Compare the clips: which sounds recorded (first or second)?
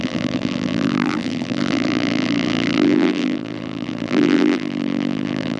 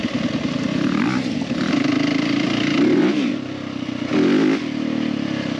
second